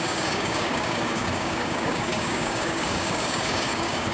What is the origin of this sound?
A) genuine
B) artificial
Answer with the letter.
B